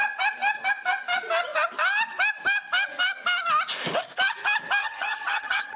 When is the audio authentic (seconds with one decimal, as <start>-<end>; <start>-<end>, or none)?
0.0-4.8